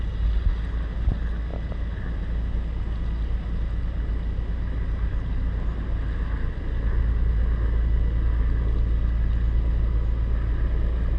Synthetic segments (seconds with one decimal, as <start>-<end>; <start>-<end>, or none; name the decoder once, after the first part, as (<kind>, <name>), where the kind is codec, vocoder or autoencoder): none